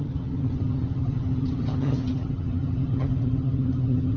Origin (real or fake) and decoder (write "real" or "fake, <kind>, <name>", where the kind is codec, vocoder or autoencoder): fake, vocoder, HiFi-GAN